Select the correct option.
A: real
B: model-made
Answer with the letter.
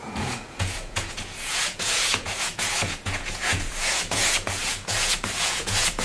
B